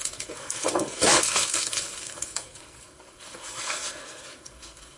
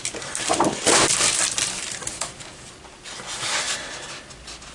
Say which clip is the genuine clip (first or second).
second